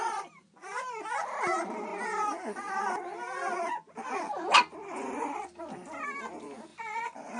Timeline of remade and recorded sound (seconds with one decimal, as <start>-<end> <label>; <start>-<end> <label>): 0.0-6.7 recorded; 6.7-7.4 remade